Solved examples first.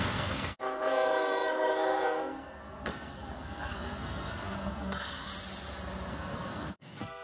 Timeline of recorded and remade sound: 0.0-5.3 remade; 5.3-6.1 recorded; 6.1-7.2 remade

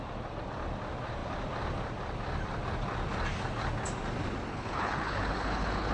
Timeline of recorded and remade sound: 0.0-4.5 recorded; 4.5-5.9 remade

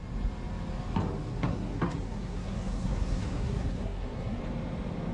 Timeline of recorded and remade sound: 0.0-1.3 recorded; 1.3-4.4 remade; 4.4-5.1 recorded

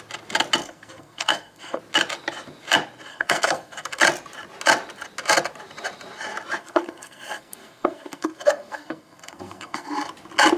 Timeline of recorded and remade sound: 0.0-0.6 recorded; 0.6-1.8 remade; 1.8-3.1 recorded; 3.1-4.0 remade; 4.0-6.6 recorded; 6.6-9.9 remade; 9.9-10.6 recorded